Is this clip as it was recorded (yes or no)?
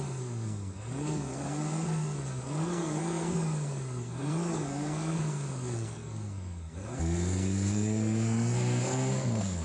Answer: no